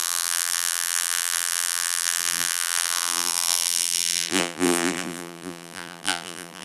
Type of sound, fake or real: fake